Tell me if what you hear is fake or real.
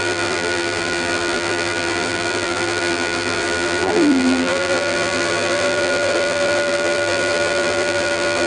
fake